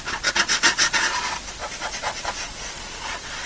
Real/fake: fake